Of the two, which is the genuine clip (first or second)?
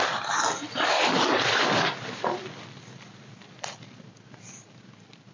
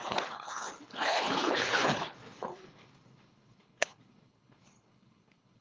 first